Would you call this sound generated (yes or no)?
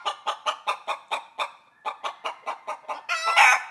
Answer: no